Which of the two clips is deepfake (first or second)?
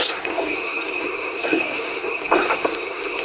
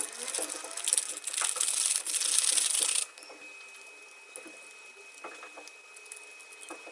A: first